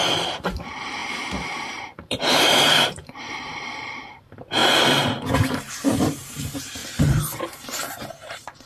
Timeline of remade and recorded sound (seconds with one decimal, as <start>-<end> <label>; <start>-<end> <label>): 0.0-4.6 remade; 4.6-5.3 recorded; 5.3-6.8 remade; 6.8-7.4 recorded; 7.4-8.7 remade